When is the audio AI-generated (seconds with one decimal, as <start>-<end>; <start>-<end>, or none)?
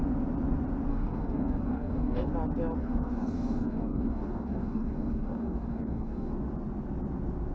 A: 0.9-2.3; 2.8-6.3